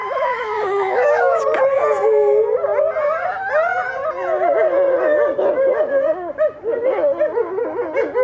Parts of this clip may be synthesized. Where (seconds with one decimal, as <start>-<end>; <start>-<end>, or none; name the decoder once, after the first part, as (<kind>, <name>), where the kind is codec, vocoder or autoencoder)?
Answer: 0.0-1.4 (autoencoder, DAC-VAE)